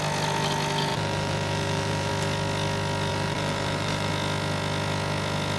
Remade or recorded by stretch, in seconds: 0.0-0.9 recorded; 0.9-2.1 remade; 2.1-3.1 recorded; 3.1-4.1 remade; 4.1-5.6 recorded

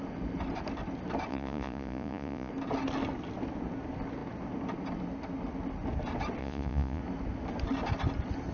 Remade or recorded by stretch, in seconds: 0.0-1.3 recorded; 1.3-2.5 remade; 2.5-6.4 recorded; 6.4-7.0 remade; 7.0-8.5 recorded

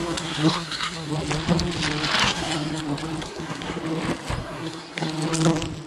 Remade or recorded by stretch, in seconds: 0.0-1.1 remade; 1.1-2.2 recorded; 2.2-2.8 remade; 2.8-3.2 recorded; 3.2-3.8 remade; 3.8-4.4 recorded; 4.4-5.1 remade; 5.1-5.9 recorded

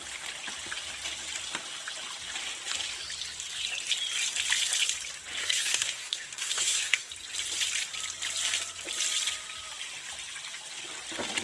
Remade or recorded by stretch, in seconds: 0.0-5.4 recorded; 5.4-7.1 remade; 7.1-11.4 recorded

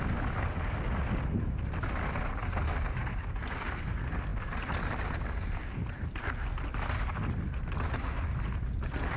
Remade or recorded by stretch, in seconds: 0.0-9.2 recorded